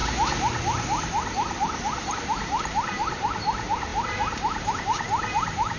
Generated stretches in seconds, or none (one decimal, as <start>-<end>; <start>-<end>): 2.1-5.8